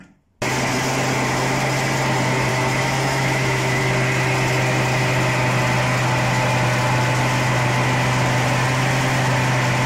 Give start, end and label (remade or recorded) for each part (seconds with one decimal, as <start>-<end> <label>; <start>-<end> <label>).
0.0-2.5 recorded; 2.5-3.8 remade; 3.8-9.9 recorded